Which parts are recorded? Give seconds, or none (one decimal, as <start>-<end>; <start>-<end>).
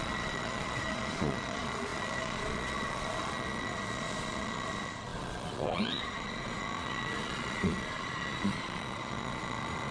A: none